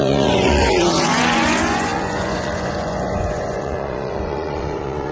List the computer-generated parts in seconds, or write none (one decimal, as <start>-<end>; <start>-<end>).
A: 0.0-5.1